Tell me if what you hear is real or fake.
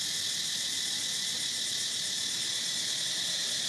real